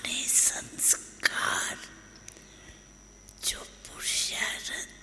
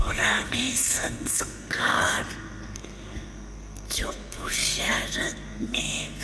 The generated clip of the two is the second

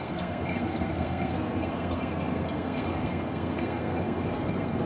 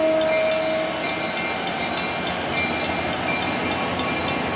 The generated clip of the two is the first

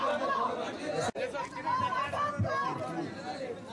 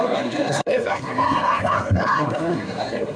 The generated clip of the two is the second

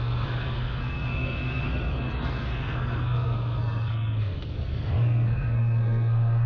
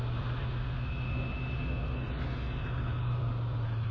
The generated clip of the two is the first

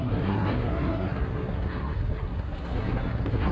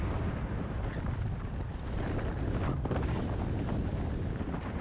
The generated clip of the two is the first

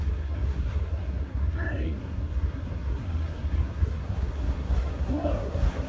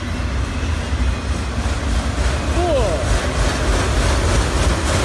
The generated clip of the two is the first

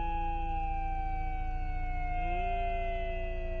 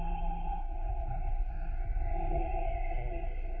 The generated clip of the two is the second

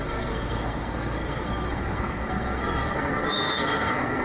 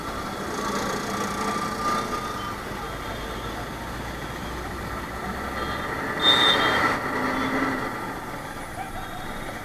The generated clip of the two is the first